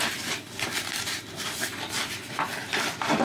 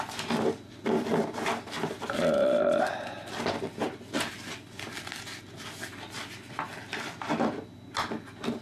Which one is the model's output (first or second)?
first